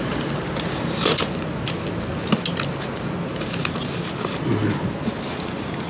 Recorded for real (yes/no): yes